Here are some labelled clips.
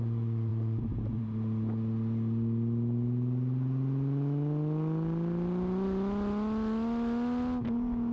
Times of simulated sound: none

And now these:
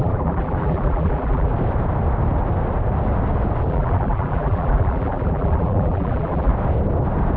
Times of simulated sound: 0.0-1.5 (vocoder, BigVGAN v2); 3.7-6.5

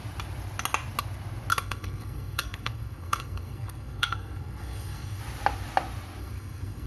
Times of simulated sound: 1.5-5.2 (codec, SNAC); 6.2-6.9

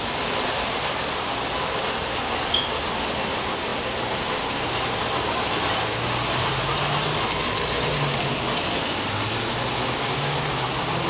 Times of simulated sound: none

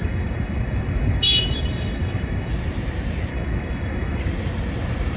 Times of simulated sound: 0.0-2.5 (autoencoder, DAC-VAE); 3.3-4.2